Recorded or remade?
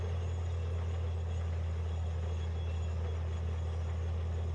recorded